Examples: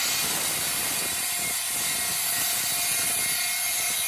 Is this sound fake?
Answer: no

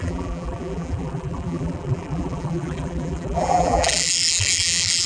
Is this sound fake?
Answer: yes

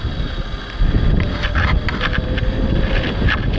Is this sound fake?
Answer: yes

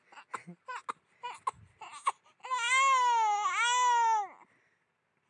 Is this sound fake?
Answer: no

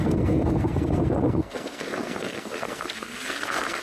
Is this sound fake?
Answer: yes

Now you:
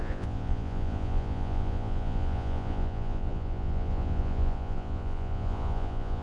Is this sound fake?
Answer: yes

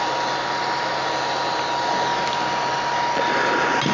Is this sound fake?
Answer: no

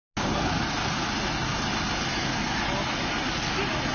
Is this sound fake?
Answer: no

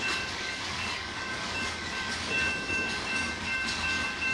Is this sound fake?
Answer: yes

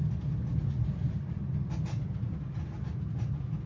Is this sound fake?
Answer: no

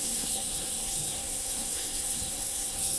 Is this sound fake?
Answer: yes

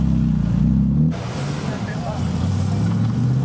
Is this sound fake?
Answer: no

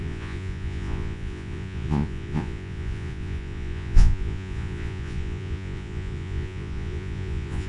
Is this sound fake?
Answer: yes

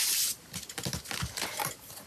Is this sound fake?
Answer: no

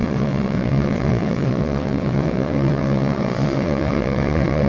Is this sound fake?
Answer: yes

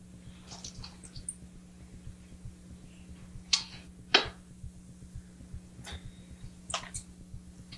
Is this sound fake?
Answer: no